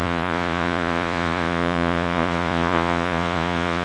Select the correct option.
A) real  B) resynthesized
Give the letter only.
B